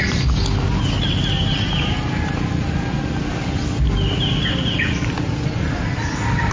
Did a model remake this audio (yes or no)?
no